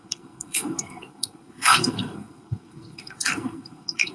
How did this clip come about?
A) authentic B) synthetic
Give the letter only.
B